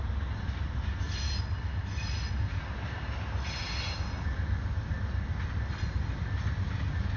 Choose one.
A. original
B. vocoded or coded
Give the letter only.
A